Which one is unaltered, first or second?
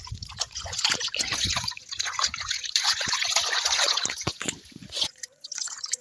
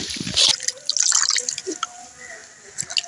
second